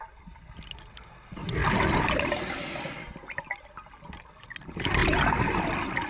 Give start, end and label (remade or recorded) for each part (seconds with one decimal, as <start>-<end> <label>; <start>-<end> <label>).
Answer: 0.0-6.1 recorded